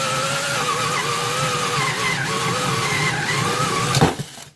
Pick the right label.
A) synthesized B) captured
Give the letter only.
B